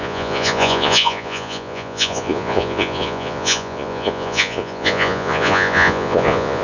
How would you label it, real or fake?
fake